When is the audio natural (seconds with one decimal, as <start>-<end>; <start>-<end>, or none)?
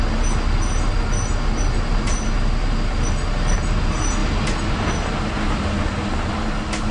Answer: 0.0-6.9